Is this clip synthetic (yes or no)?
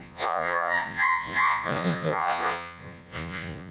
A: yes